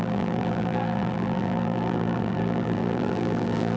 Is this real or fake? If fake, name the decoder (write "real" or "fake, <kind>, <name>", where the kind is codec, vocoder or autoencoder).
fake, vocoder, BigVGAN v2